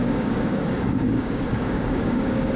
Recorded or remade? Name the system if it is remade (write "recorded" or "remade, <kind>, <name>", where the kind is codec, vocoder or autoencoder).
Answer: remade, codec, DAC